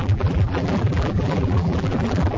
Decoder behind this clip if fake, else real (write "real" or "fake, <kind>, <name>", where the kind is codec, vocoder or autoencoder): fake, vocoder, BigVGAN v2